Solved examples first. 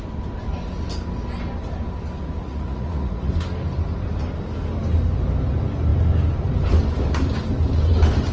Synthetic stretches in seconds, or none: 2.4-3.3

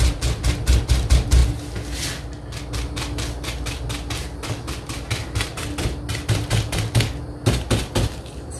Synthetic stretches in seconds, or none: none

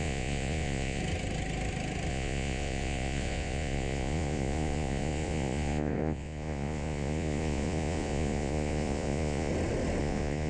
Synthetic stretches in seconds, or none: 0.0-1.0; 2.1-9.5; 10.0-10.5

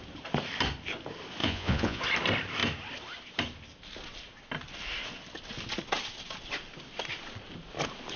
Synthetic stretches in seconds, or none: 1.4-2.0

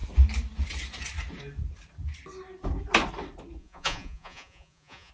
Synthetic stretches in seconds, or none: 3.6-5.1

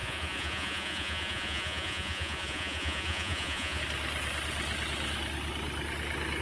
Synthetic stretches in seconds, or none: 0.0-3.8

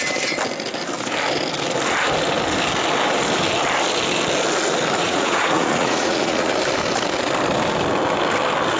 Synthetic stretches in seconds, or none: 5.0-6.5

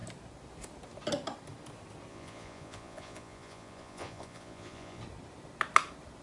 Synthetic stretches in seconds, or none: 2.1-5.0